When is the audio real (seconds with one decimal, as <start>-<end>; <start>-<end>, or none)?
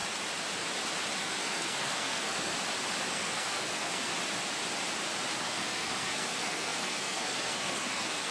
0.0-1.2; 2.5-3.1; 4.1-5.4